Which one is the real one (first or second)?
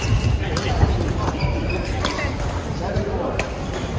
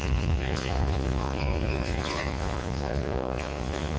first